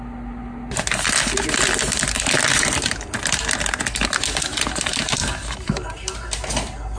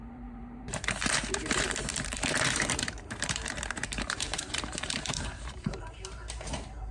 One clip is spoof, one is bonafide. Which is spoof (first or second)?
second